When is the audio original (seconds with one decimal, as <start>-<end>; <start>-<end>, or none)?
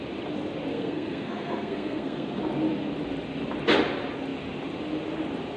0.0-0.7; 2.4-5.6